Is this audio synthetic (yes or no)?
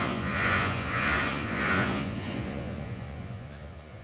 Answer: yes